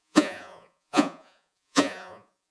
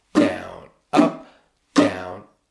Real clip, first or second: second